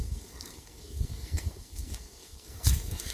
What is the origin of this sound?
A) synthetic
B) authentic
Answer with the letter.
A